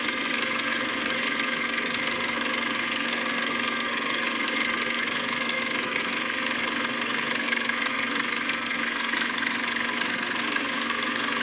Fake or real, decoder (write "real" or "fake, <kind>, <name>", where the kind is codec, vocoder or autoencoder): fake, codec, SNAC